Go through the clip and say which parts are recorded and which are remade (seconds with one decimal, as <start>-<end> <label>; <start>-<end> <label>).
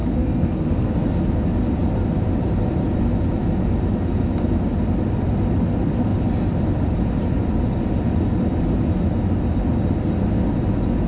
0.0-0.9 remade; 0.9-11.1 recorded